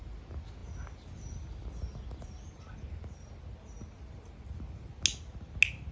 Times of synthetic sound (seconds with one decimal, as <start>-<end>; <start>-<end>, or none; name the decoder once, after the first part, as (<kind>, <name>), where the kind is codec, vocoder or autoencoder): none